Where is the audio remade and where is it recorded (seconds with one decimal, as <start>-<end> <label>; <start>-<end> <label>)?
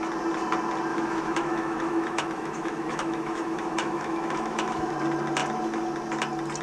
0.0-0.9 recorded; 0.9-4.9 remade; 4.9-6.6 recorded